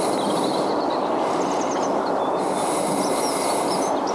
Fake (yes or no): no